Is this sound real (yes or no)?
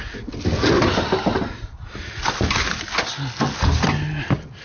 yes